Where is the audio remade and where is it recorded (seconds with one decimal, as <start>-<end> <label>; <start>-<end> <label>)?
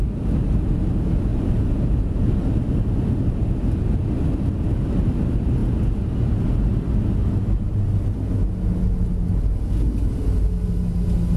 0.0-1.3 recorded; 1.3-2.3 remade; 2.3-11.4 recorded